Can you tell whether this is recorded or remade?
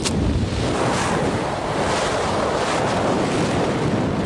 remade